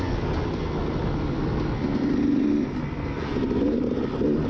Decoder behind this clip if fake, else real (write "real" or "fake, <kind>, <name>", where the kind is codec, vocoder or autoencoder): real